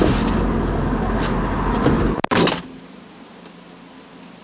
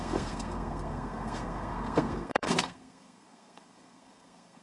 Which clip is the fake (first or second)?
second